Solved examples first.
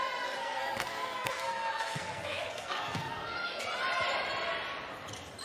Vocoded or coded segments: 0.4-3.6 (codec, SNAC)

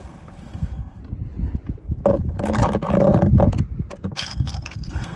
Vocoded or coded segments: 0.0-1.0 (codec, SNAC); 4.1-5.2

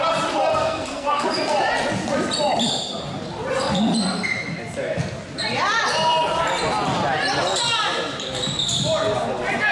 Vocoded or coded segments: 0.5-1.3 (codec, SNAC)

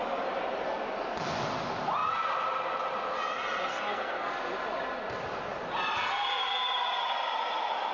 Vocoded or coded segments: 3.7-4.3 (codec, SNAC)